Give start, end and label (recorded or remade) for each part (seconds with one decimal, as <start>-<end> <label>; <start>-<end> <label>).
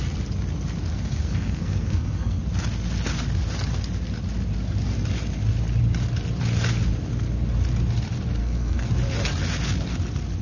0.0-0.9 recorded; 0.9-2.4 remade; 2.4-8.4 recorded; 8.4-8.9 remade; 8.9-10.4 recorded